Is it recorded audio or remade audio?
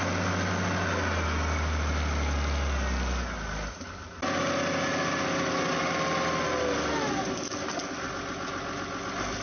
recorded